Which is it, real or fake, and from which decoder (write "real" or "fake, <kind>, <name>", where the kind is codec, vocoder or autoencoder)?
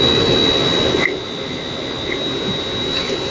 real